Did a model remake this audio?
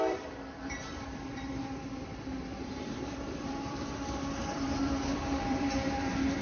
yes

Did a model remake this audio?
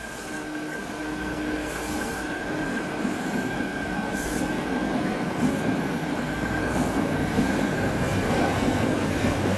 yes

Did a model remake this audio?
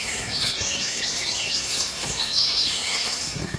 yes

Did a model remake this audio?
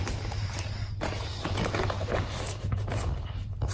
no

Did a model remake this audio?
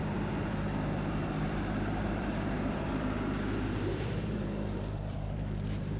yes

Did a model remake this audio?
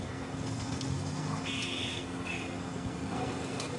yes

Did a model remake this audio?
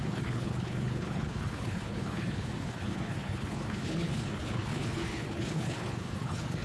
yes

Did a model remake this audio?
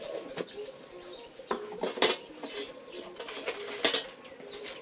no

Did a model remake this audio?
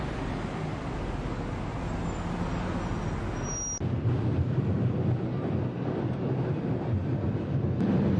no